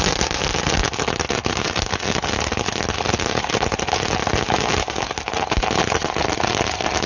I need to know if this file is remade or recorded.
recorded